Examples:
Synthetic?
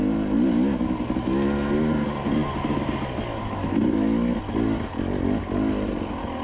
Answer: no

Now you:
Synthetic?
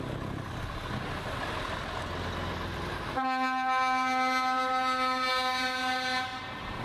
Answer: no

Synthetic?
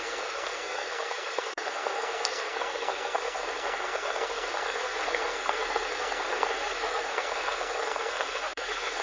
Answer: yes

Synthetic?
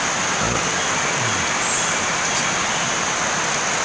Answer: no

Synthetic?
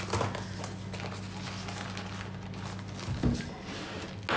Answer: no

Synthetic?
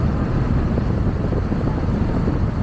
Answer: no